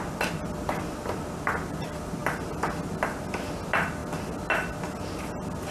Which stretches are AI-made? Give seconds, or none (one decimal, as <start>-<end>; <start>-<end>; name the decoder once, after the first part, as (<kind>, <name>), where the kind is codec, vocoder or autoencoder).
none